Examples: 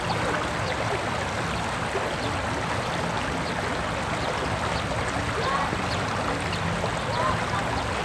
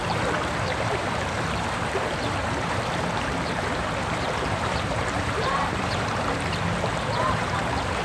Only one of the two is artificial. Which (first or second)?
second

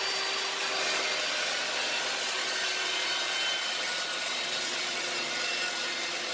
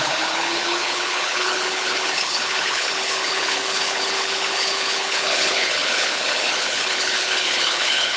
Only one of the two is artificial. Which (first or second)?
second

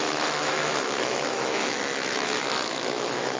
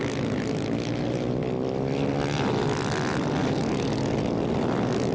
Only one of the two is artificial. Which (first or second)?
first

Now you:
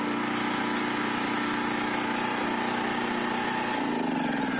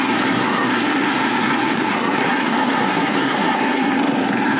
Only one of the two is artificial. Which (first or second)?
second